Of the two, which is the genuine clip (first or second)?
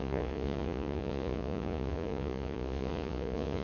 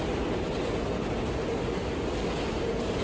second